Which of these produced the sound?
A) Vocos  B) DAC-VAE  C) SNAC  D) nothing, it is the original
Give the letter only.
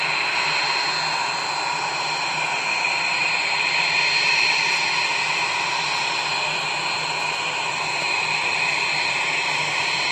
D